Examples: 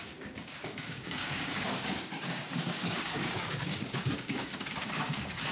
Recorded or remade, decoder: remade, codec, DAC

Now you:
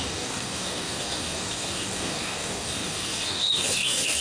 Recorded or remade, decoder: remade, codec, DAC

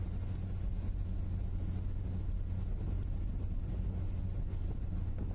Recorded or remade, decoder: recorded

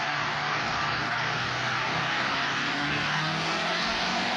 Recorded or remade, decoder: remade, codec, DAC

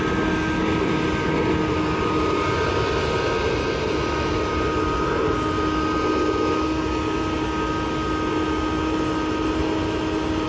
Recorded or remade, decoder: recorded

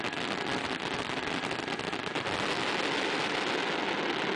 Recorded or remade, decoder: recorded